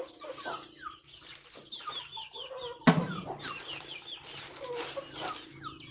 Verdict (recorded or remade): recorded